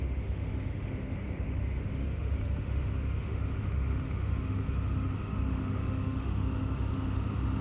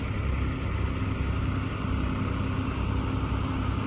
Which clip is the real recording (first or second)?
second